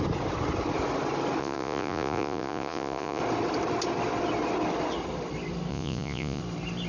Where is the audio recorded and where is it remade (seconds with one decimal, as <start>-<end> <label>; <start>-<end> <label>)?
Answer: 0.0-1.4 recorded; 1.4-3.2 remade; 3.2-5.7 recorded; 5.7-6.4 remade; 6.4-6.9 recorded